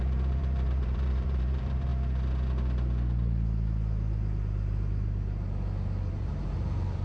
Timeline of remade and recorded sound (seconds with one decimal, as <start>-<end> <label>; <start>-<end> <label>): 0.0-1.9 remade; 1.9-6.1 recorded; 6.1-7.0 remade